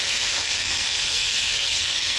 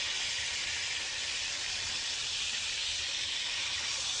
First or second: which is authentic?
second